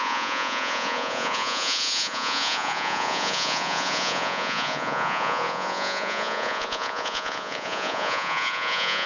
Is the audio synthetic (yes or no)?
yes